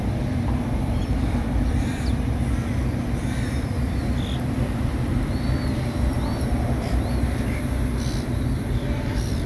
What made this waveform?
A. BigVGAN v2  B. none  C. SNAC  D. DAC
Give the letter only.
A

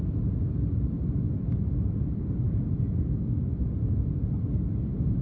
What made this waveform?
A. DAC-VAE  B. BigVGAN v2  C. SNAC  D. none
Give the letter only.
D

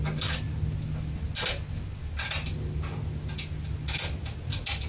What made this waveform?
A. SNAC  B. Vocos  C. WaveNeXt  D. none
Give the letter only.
D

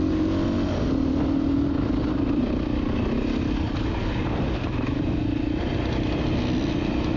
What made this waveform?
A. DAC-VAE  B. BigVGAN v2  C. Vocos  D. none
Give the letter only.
D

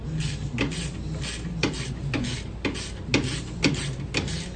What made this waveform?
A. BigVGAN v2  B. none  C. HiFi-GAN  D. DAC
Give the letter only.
B